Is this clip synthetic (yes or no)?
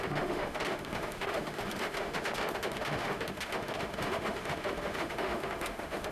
yes